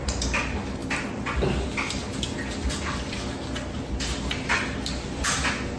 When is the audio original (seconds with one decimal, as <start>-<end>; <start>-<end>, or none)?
0.0-5.8